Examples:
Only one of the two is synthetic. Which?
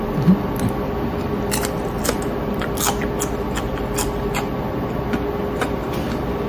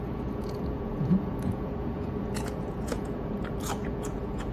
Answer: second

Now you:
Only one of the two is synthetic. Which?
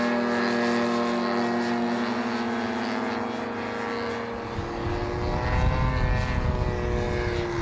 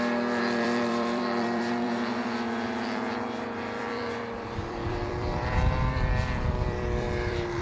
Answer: second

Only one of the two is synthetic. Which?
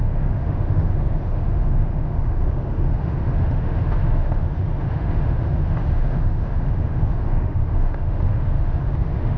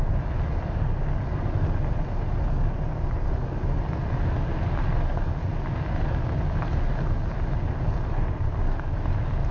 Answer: first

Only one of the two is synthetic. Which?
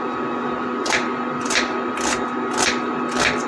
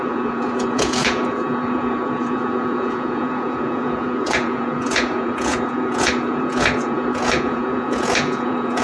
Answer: second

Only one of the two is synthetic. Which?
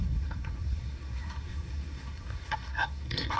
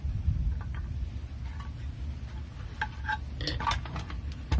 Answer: first